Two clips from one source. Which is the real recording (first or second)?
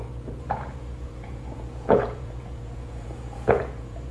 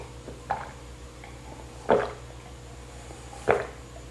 second